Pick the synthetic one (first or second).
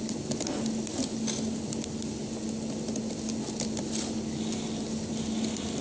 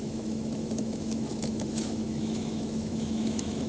second